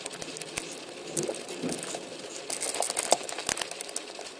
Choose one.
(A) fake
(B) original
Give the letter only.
B